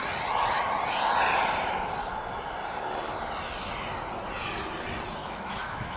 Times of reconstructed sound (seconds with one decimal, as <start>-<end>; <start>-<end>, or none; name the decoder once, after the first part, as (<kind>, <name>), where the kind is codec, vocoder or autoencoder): 5.2-6.0 (autoencoder, DAC-VAE)